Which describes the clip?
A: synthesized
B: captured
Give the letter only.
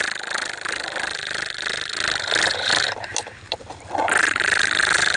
B